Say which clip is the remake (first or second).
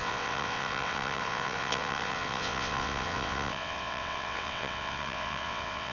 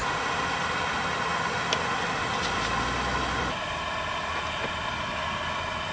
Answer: first